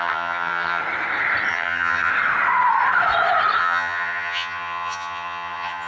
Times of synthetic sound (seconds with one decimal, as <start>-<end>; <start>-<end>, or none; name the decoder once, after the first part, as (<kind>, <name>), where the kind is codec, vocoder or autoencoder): 0.0-0.8 (vocoder, HiFi-GAN); 1.5-2.1; 3.6-5.9